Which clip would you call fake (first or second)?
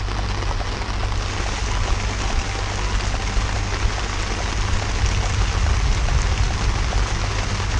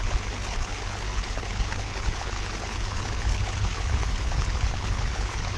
second